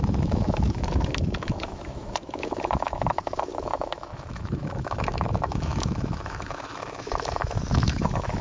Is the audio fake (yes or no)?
yes